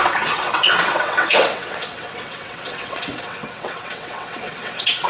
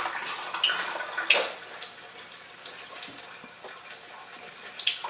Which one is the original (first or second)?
second